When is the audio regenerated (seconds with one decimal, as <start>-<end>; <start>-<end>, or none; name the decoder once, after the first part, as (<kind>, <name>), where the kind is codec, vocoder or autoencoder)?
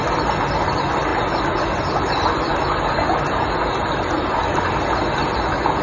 none